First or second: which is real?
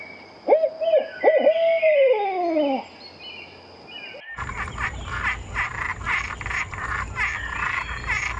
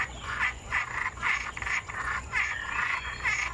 first